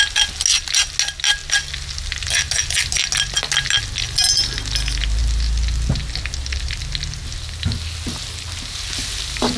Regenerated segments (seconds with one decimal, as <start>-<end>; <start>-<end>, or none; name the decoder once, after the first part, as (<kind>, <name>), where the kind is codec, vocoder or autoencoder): none